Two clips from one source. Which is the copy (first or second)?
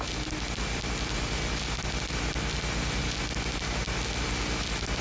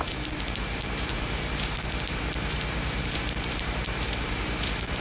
second